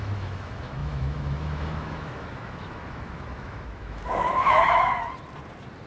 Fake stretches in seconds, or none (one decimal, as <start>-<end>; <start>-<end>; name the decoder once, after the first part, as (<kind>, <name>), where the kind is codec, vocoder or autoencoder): 0.0-4.9 (autoencoder, DAC-VAE)